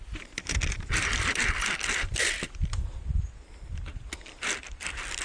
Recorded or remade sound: recorded